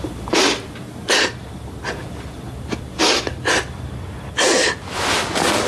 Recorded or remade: recorded